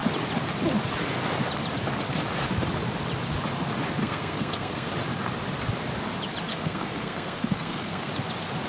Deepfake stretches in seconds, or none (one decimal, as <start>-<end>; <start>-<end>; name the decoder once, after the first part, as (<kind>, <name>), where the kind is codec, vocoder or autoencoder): 4.0-4.9 (codec, SNAC); 6.5-8.1

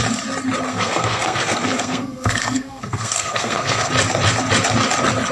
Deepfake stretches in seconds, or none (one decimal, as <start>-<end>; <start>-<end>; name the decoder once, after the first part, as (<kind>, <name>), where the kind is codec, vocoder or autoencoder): 0.7-3.9 (codec, SNAC)

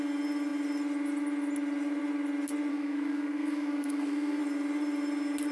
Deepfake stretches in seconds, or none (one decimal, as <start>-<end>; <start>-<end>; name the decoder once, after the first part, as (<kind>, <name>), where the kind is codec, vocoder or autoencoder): 2.7-4.4 (codec, SNAC)